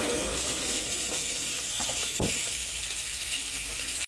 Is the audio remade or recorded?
remade